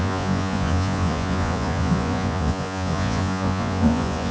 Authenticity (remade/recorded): remade